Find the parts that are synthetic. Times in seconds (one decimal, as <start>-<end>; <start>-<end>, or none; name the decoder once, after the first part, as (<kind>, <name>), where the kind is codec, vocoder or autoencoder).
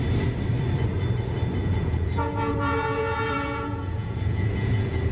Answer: 1.6-5.1 (vocoder, Vocos)